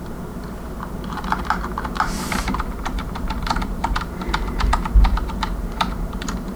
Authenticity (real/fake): fake